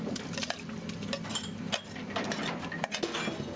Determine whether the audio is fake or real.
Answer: real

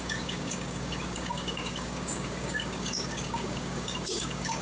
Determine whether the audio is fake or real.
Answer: fake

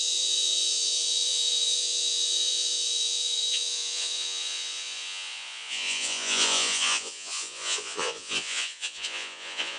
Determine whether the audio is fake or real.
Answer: fake